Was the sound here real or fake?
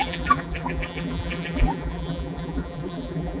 fake